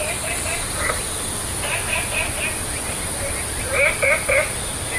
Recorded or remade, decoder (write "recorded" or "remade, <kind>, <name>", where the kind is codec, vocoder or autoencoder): recorded